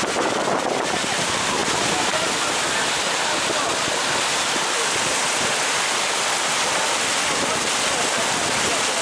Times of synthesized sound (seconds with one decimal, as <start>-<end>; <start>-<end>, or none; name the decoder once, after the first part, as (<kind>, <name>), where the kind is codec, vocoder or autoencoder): none